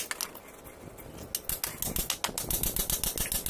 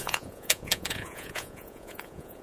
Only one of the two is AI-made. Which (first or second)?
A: second